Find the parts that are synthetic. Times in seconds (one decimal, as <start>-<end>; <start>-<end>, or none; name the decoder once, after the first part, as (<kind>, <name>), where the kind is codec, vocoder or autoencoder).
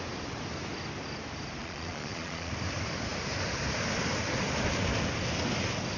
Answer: 1.6-2.5 (vocoder, Vocos)